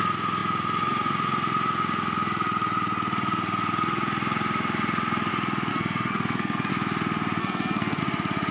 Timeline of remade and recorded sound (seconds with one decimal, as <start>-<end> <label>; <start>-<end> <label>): 0.0-5.7 recorded; 5.7-6.7 remade; 6.7-7.4 recorded; 7.4-8.0 remade; 8.0-8.5 recorded

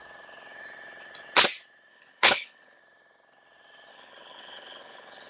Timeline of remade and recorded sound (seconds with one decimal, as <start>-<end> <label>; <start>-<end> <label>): 0.0-1.9 recorded; 1.9-2.8 remade; 2.8-3.9 recorded; 3.9-5.3 remade

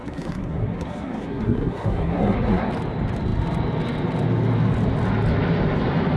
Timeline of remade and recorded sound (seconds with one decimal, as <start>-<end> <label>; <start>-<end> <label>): 0.0-2.7 remade; 2.7-6.2 recorded

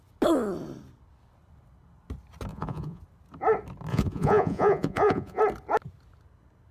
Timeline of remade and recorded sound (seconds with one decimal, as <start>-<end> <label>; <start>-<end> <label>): 0.0-2.5 recorded; 2.5-3.0 remade; 3.0-3.9 recorded; 3.9-5.4 remade; 5.4-6.7 recorded